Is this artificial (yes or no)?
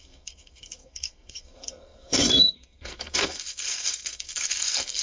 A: yes